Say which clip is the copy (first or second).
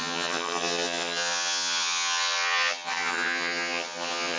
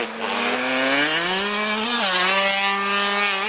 first